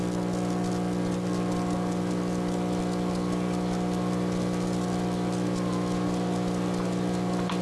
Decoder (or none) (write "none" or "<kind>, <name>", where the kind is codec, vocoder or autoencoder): none